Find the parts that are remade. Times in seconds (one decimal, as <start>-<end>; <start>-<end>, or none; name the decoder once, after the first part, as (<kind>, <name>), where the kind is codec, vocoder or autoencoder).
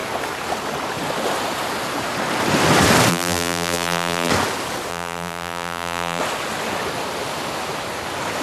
3.1-4.3 (vocoder, BigVGAN v2); 4.9-6.2